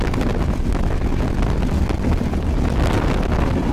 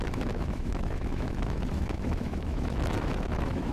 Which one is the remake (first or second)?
second